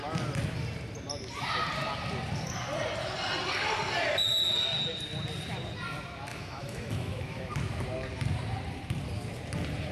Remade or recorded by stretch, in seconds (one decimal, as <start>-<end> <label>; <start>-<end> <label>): 0.0-6.3 recorded; 6.3-7.5 remade; 7.5-9.9 recorded